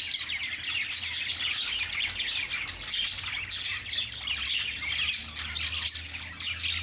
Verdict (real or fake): real